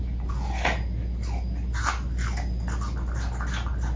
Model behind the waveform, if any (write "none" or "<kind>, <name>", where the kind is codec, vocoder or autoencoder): none